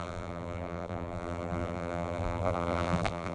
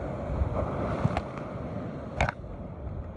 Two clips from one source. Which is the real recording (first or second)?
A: second